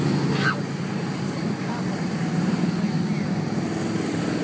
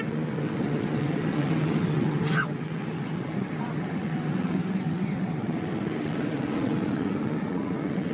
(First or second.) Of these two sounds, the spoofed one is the second